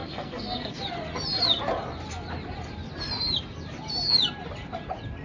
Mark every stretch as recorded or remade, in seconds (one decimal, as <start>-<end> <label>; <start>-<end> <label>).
0.0-0.8 remade; 0.8-5.2 recorded